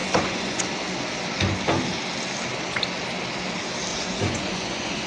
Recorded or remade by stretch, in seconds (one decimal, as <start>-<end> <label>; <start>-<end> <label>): 0.0-0.6 remade; 0.6-3.9 recorded; 3.9-5.1 remade